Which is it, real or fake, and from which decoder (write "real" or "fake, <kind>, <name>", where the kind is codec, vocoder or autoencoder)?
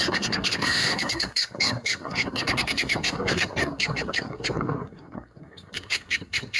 fake, codec, SNAC